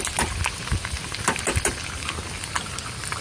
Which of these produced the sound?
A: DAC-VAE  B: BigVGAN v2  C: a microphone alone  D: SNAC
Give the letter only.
C